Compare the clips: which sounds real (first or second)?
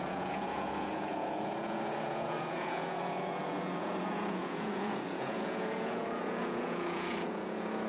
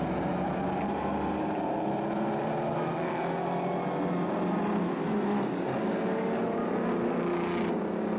second